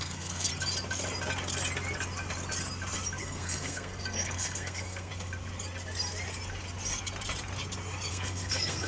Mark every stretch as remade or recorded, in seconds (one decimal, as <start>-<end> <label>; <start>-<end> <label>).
0.0-0.5 remade; 0.5-3.2 recorded; 3.2-5.1 remade; 5.1-8.1 recorded; 8.1-8.9 remade